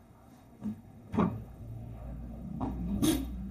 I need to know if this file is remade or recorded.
remade